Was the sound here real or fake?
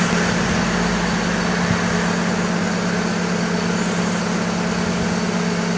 real